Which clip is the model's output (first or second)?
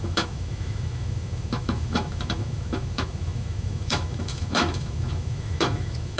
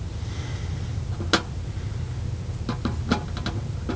first